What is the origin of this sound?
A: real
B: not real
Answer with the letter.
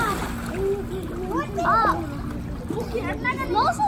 A